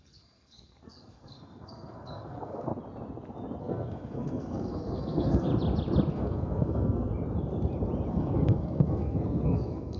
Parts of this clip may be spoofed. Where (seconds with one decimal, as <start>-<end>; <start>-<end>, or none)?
0.0-2.7; 3.6-5.5; 6.1-7.1; 8.1-10.0